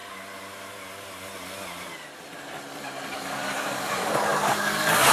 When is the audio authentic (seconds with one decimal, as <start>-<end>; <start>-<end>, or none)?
0.0-3.1